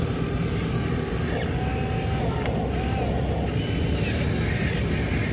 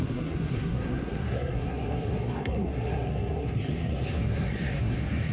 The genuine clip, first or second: first